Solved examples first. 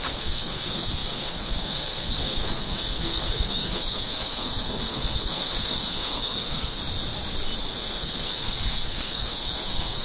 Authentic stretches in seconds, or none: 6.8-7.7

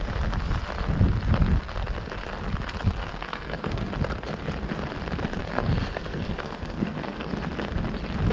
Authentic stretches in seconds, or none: 0.0-3.0; 3.9-5.4; 7.3-8.3

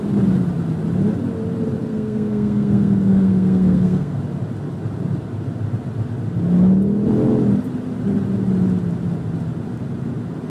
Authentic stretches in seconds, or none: 0.0-1.8; 4.2-10.5

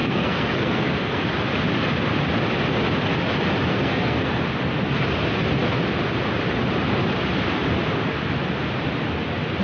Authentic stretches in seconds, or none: 1.2-3.7; 4.3-9.6

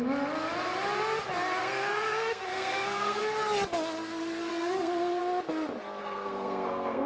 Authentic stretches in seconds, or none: 0.0-1.6; 3.2-4.5; 5.2-6.0

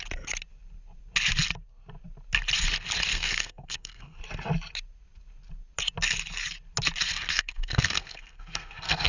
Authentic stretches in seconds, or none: 0.0-3.1; 4.2-7.3

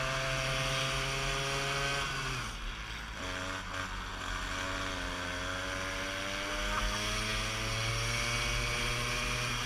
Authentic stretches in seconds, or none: 0.0-9.7